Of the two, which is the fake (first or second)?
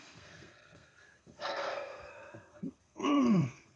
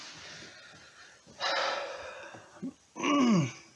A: first